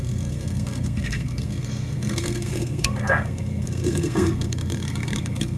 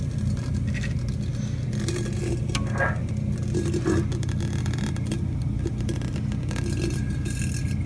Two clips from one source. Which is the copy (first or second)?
first